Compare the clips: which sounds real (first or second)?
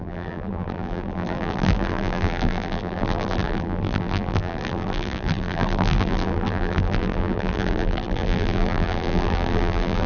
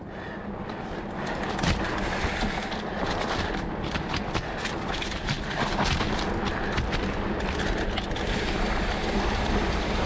second